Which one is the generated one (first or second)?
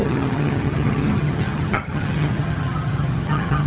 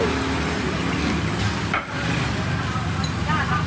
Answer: first